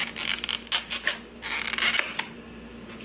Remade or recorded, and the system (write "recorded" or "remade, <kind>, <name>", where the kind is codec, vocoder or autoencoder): recorded